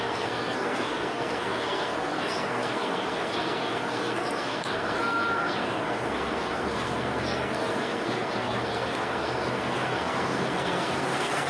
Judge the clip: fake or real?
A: fake